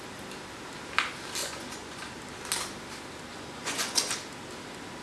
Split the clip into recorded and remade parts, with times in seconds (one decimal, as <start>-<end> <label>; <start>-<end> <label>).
0.0-1.4 recorded; 1.4-2.1 remade; 2.1-3.3 recorded; 3.3-4.1 remade; 4.1-5.0 recorded

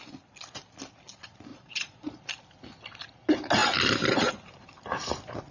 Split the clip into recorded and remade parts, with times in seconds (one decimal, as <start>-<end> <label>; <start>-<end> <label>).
0.0-1.5 recorded; 1.5-2.2 remade; 2.2-5.5 recorded

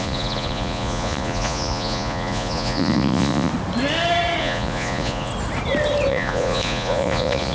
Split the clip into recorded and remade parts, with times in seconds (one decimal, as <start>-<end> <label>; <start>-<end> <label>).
0.0-3.5 remade; 3.5-4.4 recorded; 4.4-5.3 remade; 5.3-6.1 recorded; 6.1-7.5 remade

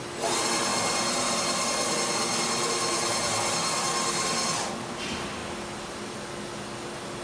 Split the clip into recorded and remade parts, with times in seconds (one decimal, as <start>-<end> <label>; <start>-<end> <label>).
0.0-7.2 recorded

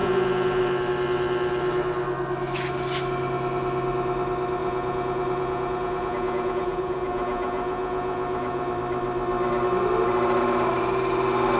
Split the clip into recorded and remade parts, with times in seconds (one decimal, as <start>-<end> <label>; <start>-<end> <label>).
0.0-0.6 remade; 0.6-4.6 recorded; 4.6-8.7 remade; 8.7-11.6 recorded

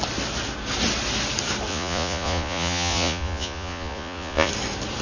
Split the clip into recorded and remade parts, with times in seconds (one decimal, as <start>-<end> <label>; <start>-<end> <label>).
0.0-1.7 recorded; 1.7-4.5 remade; 4.5-5.0 recorded

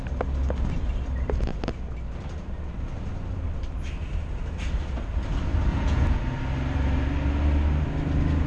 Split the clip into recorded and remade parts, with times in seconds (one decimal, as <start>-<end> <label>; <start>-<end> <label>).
0.0-5.7 recorded; 5.7-6.2 remade; 6.2-8.5 recorded